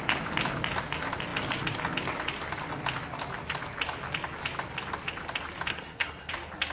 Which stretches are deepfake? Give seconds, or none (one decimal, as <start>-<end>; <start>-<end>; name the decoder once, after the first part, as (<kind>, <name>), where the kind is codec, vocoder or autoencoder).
5.7-6.3 (codec, SNAC)